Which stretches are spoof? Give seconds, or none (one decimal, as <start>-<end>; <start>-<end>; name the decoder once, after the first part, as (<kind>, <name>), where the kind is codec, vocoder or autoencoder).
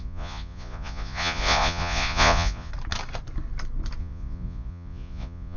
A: 0.0-2.7 (vocoder, Vocos); 4.0-5.6